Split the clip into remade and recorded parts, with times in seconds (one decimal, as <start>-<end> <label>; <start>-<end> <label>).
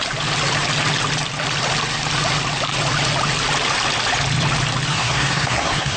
0.0-4.9 recorded; 4.9-6.0 remade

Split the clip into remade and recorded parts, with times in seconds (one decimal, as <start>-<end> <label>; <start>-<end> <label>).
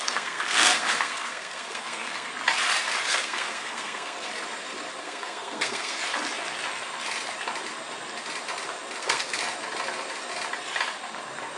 0.0-2.3 remade; 2.3-3.1 recorded; 3.1-4.3 remade; 4.3-5.0 recorded; 5.0-6.0 remade; 6.0-9.0 recorded; 9.0-9.4 remade; 9.4-11.6 recorded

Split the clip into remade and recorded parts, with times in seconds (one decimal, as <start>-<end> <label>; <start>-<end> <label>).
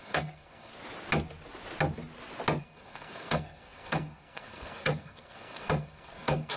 0.0-0.7 remade; 0.7-2.6 recorded; 2.6-6.6 remade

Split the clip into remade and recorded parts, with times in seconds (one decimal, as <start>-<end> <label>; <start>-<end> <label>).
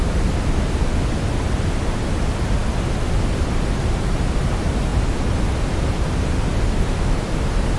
0.0-7.8 recorded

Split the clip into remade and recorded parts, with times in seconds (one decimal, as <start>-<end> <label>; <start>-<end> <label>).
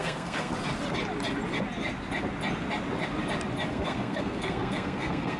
0.0-0.5 remade; 0.5-3.7 recorded; 3.7-5.4 remade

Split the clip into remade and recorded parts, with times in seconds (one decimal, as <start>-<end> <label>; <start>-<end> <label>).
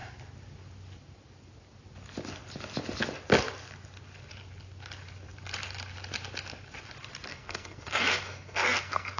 0.0-7.3 recorded; 7.3-9.2 remade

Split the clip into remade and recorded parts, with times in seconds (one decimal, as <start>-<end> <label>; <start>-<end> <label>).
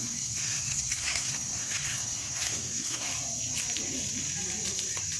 0.0-3.1 remade; 3.1-5.2 recorded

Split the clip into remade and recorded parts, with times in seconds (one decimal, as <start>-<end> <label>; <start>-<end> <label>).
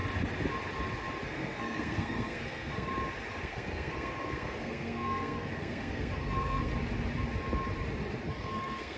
0.0-1.2 recorded; 1.2-2.9 remade; 2.9-3.4 recorded; 3.4-6.7 remade; 6.7-8.4 recorded; 8.4-9.0 remade